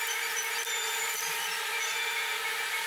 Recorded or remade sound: recorded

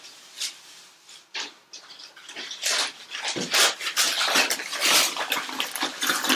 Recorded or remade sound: recorded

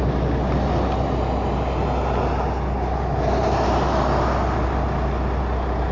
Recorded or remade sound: recorded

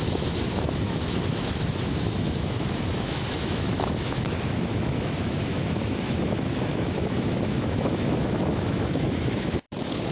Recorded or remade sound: remade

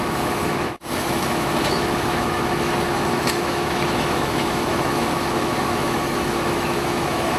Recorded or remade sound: remade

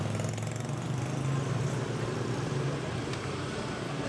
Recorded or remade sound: recorded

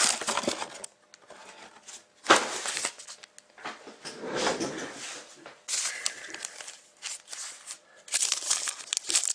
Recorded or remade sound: recorded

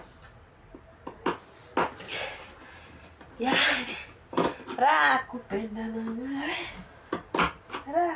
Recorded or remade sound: recorded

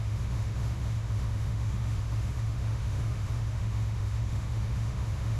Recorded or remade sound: remade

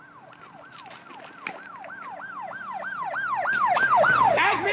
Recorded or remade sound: recorded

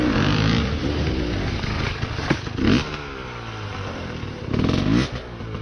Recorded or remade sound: recorded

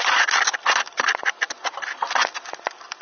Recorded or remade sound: recorded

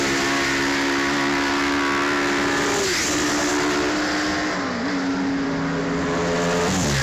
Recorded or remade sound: recorded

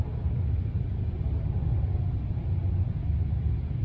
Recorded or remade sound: recorded